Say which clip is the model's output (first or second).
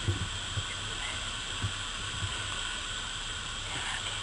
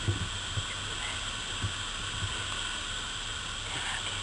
first